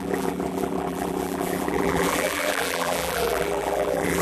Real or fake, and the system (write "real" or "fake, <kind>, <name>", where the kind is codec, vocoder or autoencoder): fake, vocoder, BigVGAN v2